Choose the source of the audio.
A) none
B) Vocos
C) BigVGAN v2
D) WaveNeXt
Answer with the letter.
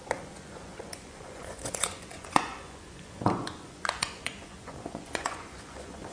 B